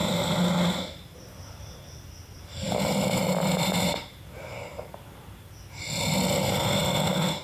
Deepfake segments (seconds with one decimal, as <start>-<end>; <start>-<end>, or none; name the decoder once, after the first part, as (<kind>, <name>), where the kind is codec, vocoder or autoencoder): none